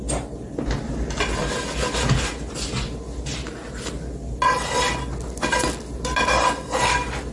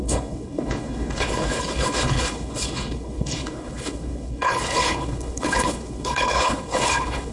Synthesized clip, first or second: second